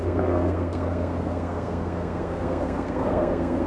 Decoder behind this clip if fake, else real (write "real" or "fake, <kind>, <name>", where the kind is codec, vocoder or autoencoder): fake, codec, SNAC